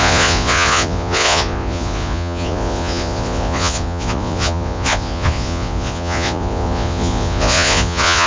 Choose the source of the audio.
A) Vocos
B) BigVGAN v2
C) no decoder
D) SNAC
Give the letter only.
A